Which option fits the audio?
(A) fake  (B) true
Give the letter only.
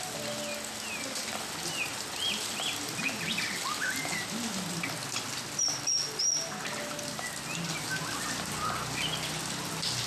B